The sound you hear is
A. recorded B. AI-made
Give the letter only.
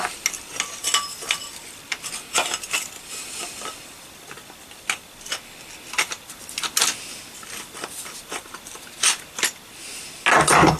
A